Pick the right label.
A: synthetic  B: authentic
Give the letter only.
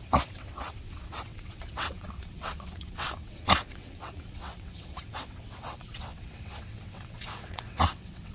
A